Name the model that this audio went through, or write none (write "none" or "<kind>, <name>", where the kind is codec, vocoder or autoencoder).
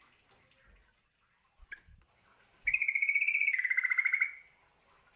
none